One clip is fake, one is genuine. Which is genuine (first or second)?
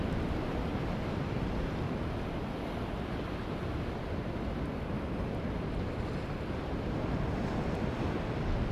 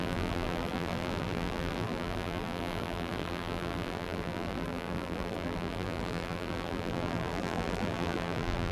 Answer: first